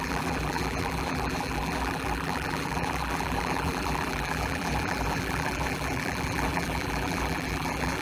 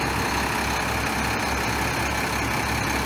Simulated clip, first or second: first